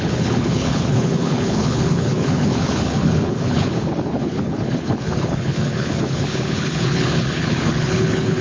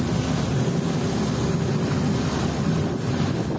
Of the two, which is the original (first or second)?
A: second